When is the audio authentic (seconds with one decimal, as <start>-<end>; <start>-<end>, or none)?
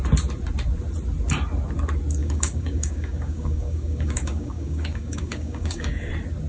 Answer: 0.0-2.2; 6.1-6.5